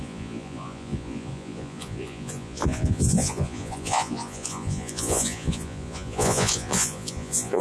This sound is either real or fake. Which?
fake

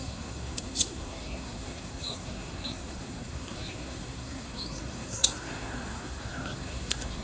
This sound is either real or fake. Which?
fake